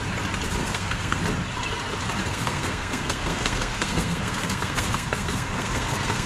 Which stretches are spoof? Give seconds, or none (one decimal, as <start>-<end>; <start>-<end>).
0.6-1.2; 2.2-6.3